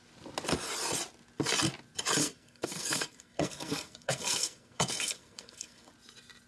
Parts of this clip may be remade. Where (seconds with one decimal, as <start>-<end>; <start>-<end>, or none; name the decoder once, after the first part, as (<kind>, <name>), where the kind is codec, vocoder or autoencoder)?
2.2-5.9 (codec, SNAC)